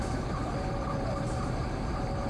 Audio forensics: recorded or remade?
remade